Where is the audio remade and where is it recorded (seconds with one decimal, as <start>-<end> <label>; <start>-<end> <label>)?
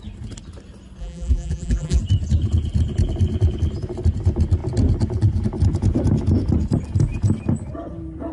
0.0-1.0 recorded; 1.0-2.0 remade; 2.0-8.3 recorded